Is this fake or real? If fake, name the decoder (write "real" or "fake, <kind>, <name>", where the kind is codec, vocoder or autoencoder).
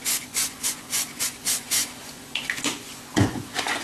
fake, vocoder, Vocos